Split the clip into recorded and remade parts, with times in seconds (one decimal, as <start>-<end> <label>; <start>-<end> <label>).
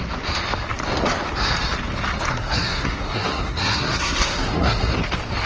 0.0-2.3 recorded; 2.3-4.9 remade; 4.9-5.5 recorded